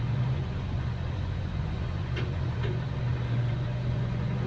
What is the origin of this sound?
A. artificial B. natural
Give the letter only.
A